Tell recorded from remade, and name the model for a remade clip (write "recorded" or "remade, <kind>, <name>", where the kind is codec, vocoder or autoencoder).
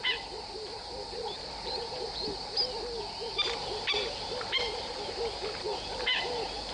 remade, vocoder, BigVGAN v2